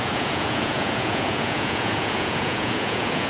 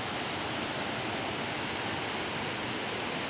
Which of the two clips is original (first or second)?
second